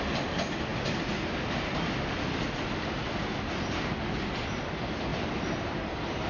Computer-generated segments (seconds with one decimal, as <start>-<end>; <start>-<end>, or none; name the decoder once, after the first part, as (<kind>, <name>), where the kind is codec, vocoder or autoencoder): 5.1-5.8 (vocoder, BigVGAN v2)